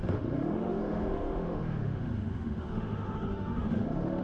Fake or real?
fake